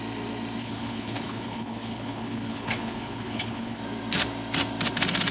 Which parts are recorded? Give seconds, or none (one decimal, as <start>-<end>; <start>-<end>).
0.0-0.6; 3.8-5.3